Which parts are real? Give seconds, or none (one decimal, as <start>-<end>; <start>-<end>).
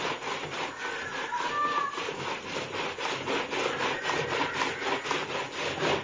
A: 0.0-6.0